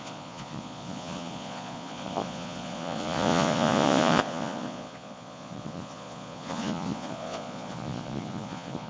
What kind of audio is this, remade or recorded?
remade